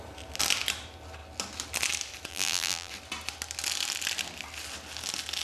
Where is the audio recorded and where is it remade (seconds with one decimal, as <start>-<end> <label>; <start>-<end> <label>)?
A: 0.0-2.3 recorded; 2.3-2.9 remade; 2.9-5.4 recorded